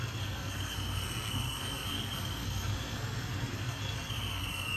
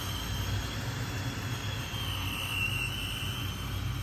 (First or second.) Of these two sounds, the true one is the second